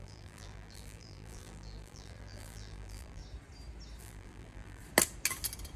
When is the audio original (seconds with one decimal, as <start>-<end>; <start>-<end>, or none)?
3.2-4.0; 4.8-5.8